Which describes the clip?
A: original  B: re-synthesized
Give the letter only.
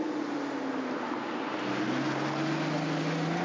A